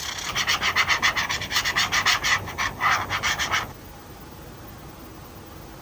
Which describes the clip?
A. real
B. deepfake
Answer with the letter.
A